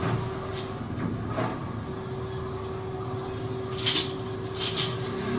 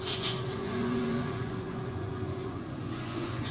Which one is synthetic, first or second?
second